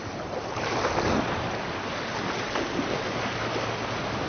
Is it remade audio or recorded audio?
remade